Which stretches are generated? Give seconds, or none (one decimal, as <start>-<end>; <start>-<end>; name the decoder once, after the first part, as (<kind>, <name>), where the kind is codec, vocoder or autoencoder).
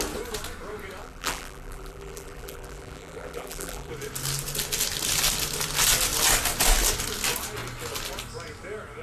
1.0-3.9 (vocoder, BigVGAN v2)